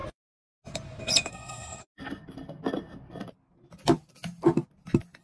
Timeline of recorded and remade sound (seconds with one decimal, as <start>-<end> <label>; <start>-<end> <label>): 0.0-1.3 recorded; 1.3-1.8 remade; 1.8-5.2 recorded

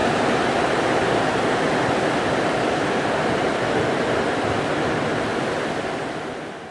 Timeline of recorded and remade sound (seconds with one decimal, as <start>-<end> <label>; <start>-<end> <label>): 0.0-6.7 recorded

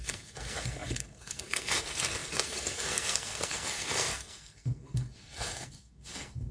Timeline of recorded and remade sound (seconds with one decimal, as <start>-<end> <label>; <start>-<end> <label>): 0.0-6.5 remade

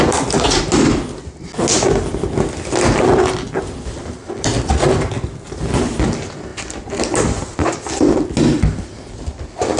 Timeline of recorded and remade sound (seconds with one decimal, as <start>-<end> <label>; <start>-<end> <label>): 0.0-9.8 recorded

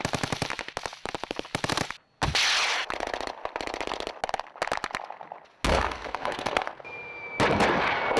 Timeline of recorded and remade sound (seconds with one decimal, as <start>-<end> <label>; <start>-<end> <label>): 0.0-5.7 recorded; 5.7-6.8 remade; 6.8-8.2 recorded